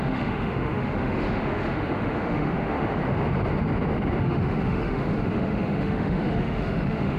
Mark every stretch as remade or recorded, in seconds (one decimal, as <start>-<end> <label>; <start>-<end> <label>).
0.0-3.0 remade; 3.0-4.2 recorded; 4.2-7.2 remade